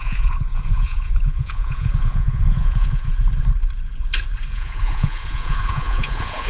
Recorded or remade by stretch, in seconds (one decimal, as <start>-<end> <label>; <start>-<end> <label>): 0.0-3.1 remade; 3.1-4.5 recorded; 4.5-6.5 remade